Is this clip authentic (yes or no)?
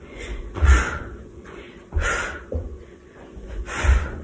no